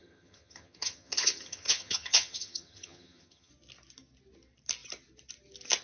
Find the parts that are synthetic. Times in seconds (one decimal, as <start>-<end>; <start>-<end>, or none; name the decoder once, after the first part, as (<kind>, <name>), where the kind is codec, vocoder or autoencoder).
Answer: 0.0-3.5 (vocoder, HiFi-GAN)